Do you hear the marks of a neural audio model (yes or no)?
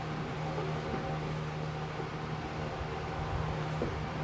no